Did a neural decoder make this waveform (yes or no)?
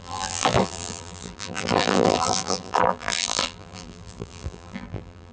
yes